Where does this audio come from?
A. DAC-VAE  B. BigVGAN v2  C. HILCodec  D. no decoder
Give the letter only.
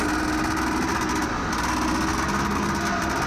D